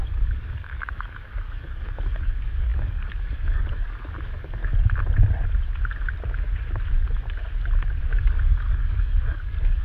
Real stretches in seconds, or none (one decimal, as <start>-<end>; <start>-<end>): 4.6-8.0